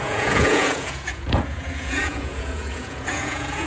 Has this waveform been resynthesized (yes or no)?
yes